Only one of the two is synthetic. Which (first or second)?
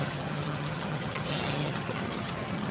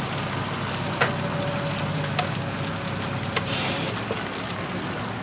first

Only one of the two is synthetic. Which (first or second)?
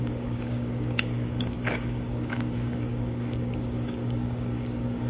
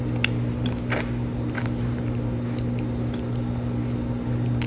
first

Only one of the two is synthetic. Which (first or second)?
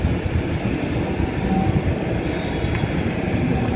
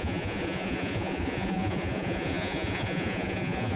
second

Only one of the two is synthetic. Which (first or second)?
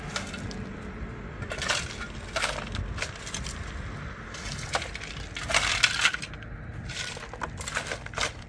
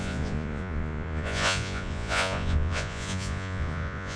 second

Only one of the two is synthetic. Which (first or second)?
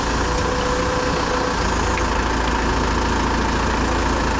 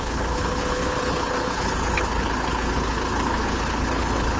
second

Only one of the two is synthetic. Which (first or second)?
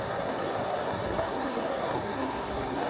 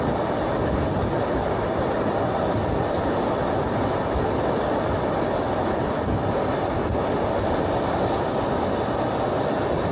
first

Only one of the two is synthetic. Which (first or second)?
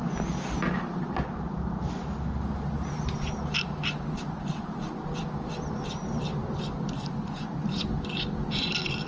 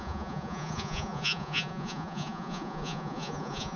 second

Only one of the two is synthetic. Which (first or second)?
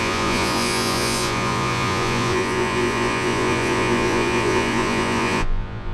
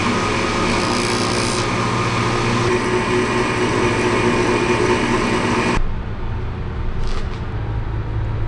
first